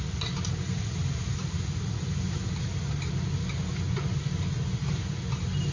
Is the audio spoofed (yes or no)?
no